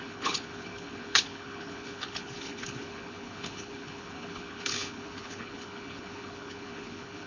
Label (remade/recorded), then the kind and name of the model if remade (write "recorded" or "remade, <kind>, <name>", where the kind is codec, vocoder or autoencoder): remade, codec, HILCodec